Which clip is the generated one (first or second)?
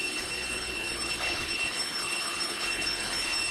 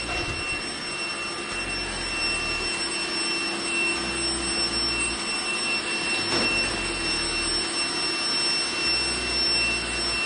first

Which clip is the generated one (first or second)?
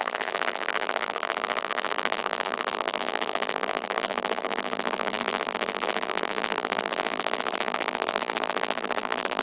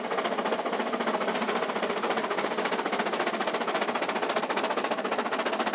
first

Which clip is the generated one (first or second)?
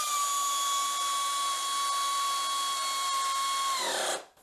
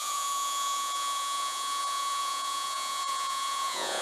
second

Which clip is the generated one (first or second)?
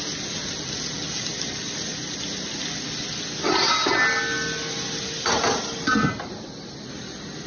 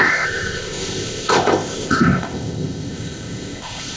second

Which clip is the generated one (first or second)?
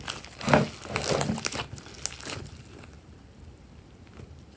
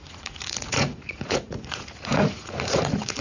second